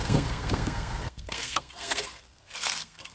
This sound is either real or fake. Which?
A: fake